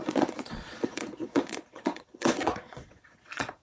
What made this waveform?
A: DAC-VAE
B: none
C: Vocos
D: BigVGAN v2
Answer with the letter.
C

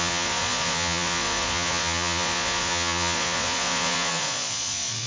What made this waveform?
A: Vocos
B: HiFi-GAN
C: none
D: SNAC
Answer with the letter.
A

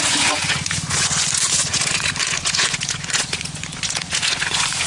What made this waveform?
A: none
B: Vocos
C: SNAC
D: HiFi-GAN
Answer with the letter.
B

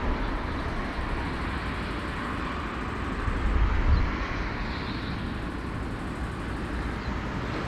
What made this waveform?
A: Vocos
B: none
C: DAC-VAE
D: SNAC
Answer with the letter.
B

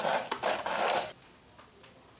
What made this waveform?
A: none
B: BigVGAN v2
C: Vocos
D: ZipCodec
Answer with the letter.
A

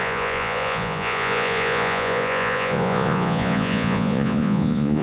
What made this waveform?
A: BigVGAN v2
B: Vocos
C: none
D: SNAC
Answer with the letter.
B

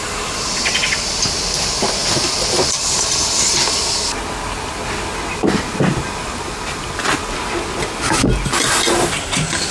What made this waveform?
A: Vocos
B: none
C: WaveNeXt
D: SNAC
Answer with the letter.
B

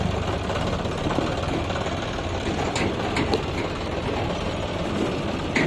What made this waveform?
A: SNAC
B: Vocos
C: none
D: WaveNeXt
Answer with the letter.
C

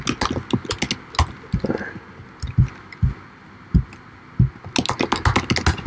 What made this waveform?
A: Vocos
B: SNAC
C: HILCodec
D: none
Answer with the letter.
D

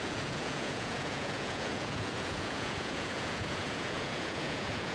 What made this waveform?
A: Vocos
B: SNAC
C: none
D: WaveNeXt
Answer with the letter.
A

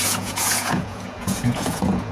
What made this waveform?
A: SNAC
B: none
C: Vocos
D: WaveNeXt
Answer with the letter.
C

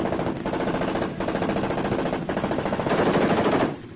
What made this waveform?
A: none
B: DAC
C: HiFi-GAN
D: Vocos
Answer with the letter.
A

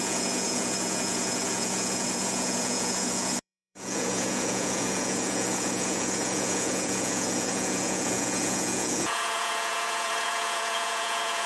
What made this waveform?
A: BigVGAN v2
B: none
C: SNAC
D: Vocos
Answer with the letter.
D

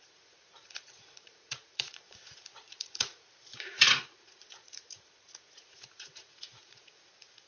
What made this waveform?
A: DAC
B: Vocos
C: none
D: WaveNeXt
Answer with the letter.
B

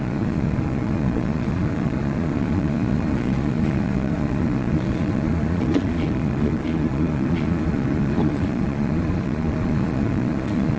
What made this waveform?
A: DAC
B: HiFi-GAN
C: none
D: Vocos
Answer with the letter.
D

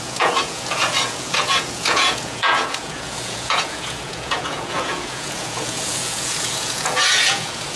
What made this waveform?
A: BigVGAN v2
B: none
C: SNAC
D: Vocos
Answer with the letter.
D